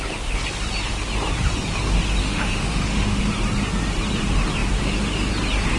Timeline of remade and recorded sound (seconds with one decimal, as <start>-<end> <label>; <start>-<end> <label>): 0.0-2.2 recorded; 2.2-3.2 remade; 3.2-5.8 recorded